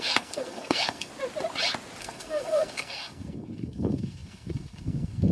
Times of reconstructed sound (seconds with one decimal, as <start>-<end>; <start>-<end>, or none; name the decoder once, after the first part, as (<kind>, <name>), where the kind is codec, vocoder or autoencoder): 0.0-1.1 (codec, SNAC); 2.0-5.3